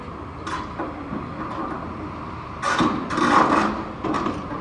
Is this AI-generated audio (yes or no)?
no